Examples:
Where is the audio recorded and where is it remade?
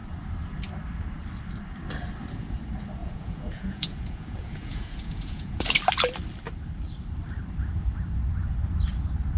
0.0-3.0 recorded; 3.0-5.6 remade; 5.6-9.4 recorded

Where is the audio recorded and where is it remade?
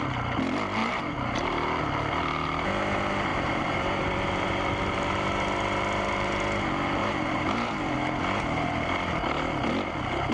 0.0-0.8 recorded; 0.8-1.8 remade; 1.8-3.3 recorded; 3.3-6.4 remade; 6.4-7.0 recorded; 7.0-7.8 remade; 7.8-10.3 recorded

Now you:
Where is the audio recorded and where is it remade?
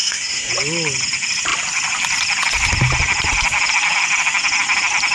0.0-0.5 remade; 0.5-5.1 recorded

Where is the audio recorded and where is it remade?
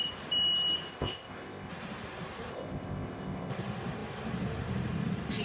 0.0-0.9 recorded; 0.9-1.7 remade; 1.7-2.5 recorded; 2.5-3.5 remade; 3.5-5.4 recorded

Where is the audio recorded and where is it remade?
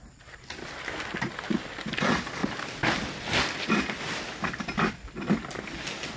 0.0-6.2 recorded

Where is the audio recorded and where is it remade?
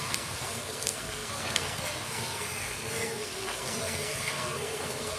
0.0-5.2 remade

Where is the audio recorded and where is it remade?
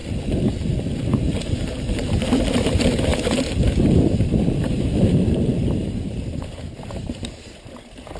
0.0-1.0 recorded; 1.0-8.2 remade